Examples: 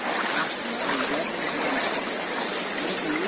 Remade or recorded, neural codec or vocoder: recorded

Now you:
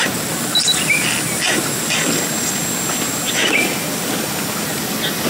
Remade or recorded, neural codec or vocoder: recorded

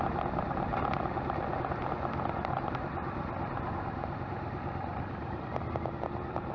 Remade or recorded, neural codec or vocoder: recorded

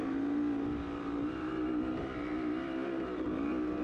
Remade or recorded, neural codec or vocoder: recorded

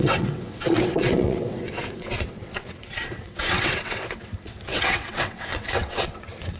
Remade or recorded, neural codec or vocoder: remade, vocoder, WaveNeXt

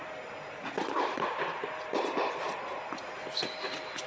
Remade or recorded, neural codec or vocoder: recorded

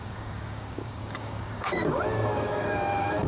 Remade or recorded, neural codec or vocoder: remade, codec, DAC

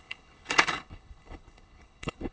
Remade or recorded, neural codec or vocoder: remade, codec, HILCodec